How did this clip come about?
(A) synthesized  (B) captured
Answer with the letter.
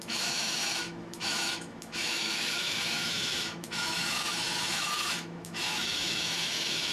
A